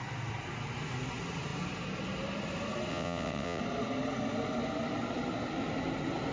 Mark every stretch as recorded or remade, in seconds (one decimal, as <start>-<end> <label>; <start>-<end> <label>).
0.0-2.9 recorded; 2.9-3.6 remade; 3.6-6.3 recorded

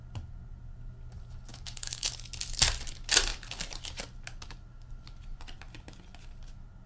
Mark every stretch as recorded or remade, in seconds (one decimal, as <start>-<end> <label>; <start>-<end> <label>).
0.0-1.5 recorded; 1.5-2.1 remade; 2.1-6.9 recorded

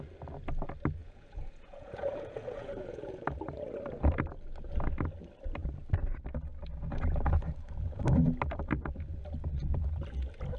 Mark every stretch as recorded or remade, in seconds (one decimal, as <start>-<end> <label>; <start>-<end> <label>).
0.0-1.0 recorded; 1.0-3.2 remade; 3.2-10.6 recorded